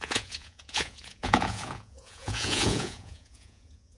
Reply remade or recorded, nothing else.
remade